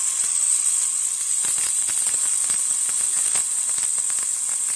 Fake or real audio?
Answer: real